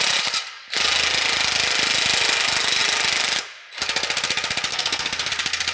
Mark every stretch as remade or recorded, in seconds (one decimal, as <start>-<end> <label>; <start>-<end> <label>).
0.0-4.7 recorded; 4.7-5.3 remade; 5.3-5.7 recorded